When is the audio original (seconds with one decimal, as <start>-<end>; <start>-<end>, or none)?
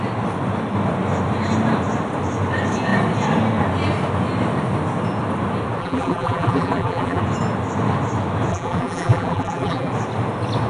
0.0-5.8; 7.2-8.5; 9.9-10.7